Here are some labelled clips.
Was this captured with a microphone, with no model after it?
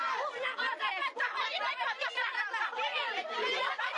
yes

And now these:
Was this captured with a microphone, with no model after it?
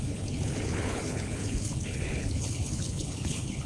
no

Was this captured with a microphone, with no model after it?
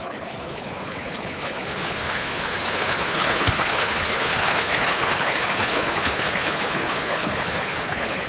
no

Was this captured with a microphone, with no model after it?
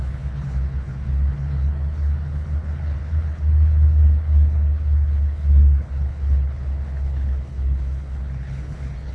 no